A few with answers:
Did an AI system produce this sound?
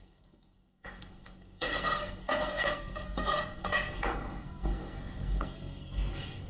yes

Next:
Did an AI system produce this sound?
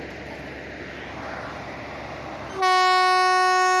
no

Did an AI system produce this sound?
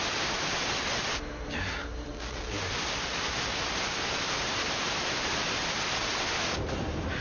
no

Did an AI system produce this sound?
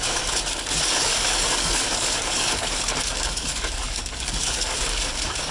yes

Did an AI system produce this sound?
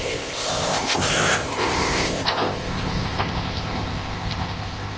yes